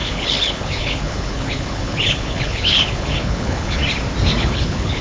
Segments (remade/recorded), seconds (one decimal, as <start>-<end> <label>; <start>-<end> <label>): 0.0-3.8 remade; 3.8-4.4 recorded; 4.4-5.0 remade